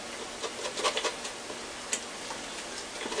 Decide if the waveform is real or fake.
real